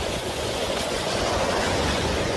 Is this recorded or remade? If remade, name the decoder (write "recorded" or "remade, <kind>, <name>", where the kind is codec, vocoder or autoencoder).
remade, vocoder, Vocos